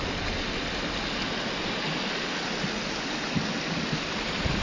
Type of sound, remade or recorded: recorded